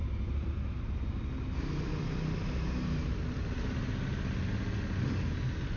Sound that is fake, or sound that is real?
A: real